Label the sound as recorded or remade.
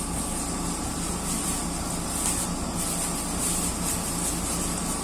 recorded